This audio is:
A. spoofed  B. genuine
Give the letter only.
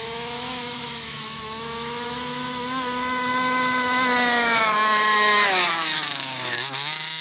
A